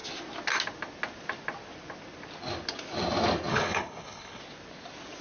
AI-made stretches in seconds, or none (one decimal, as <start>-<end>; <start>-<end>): 3.5-4.4